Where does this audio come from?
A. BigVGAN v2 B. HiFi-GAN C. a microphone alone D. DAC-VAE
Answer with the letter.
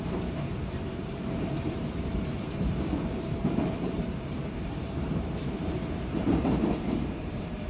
A